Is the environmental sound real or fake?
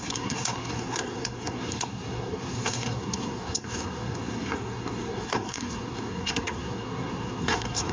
fake